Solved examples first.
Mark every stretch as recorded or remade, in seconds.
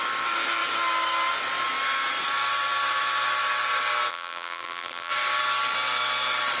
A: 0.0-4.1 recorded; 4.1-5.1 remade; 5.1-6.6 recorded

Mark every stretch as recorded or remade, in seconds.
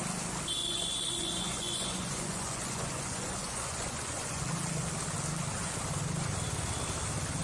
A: 0.0-0.6 recorded; 0.6-4.4 remade; 4.4-7.4 recorded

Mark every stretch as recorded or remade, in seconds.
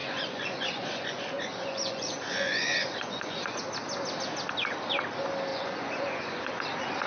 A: 0.0-3.6 remade; 3.6-5.5 recorded; 5.5-6.6 remade; 6.6-7.1 recorded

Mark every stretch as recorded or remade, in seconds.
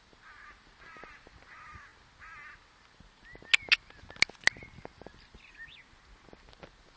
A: 0.0-7.0 recorded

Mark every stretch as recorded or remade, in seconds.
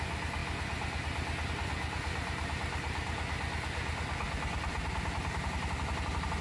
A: 0.0-4.7 recorded; 4.7-5.7 remade; 5.7-6.4 recorded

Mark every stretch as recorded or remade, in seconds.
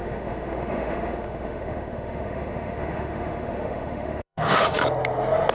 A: 0.0-4.8 remade; 4.8-5.5 recorded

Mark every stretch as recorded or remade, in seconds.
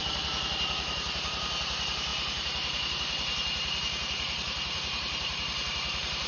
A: 0.0-2.1 recorded; 2.1-6.3 remade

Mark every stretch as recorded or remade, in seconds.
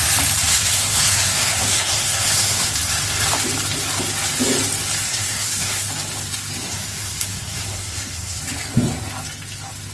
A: 0.0-0.5 recorded; 0.5-2.7 remade; 2.7-5.1 recorded; 5.1-5.9 remade; 5.9-6.6 recorded; 6.6-8.4 remade; 8.4-9.9 recorded